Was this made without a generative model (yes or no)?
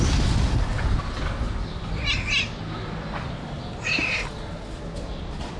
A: yes